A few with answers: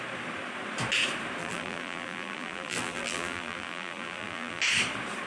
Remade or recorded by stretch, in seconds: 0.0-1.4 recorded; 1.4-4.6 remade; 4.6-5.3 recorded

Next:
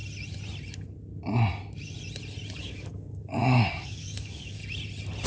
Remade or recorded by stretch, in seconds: 0.0-2.6 recorded; 2.6-4.6 remade; 4.6-5.3 recorded

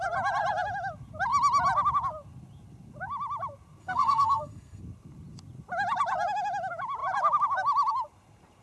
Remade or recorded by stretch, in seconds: 0.0-3.8 recorded; 3.8-4.8 remade; 4.8-8.6 recorded

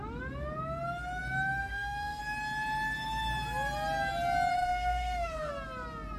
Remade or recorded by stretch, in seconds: 0.0-1.6 recorded; 1.6-2.2 remade; 2.2-4.5 recorded; 4.5-5.5 remade; 5.5-6.2 recorded